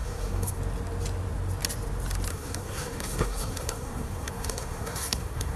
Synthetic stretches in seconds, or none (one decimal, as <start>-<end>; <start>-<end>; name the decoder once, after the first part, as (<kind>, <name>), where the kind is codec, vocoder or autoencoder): 0.0-0.6 (codec, SNAC); 2.3-5.6